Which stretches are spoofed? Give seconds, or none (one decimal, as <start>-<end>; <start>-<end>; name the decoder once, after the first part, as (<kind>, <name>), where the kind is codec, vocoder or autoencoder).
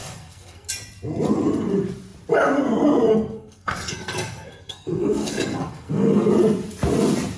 0.0-0.7 (codec, SNAC); 3.1-6.3